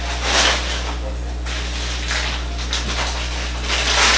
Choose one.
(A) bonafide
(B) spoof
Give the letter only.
A